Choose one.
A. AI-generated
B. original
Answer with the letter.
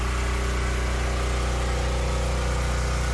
B